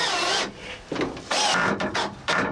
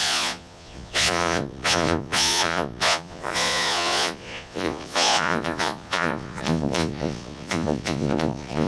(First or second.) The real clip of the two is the first